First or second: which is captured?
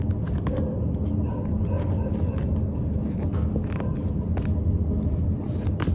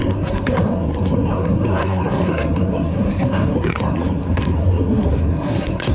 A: first